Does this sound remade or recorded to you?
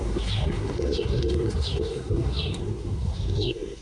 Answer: remade